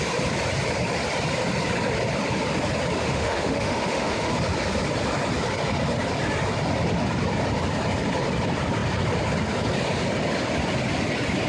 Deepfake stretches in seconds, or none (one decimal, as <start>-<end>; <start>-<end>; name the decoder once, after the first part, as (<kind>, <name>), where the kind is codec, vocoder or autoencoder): 3.0-4.3 (autoencoder, DAC-VAE)